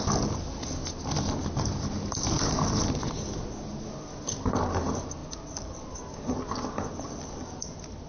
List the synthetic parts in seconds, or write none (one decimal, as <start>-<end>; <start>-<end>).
none